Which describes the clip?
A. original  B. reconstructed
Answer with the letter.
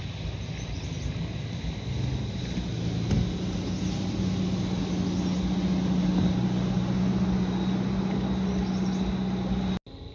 A